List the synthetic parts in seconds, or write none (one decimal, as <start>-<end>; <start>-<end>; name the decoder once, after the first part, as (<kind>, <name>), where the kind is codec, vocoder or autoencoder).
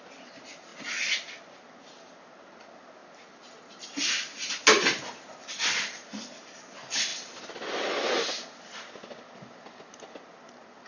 none